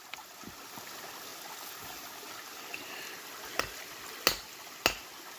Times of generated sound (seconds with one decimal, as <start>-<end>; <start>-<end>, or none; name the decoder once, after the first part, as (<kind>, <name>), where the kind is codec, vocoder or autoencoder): none